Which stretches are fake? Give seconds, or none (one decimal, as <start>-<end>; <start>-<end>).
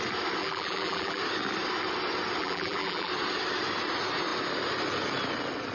0.4-1.2; 2.4-3.1